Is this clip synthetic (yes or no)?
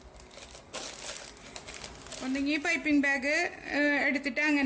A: no